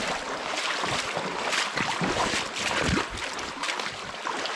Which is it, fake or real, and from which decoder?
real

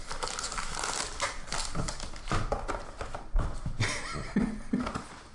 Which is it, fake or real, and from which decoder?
real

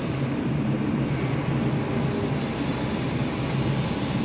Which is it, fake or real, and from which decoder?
real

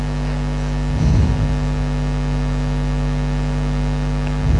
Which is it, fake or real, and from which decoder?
real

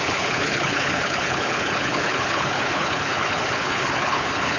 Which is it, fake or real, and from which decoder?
fake, codec, HILCodec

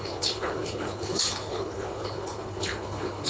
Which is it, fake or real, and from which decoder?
fake, codec, HILCodec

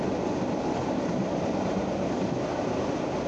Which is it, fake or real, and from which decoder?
real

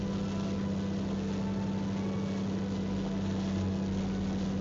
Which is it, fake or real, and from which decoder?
real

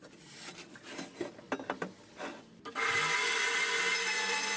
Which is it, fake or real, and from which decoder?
real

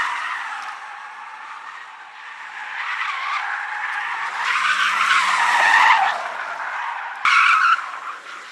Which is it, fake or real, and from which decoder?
real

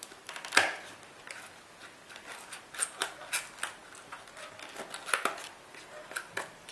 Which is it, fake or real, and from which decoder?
real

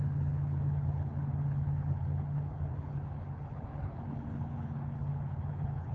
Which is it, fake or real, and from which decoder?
fake, codec, HILCodec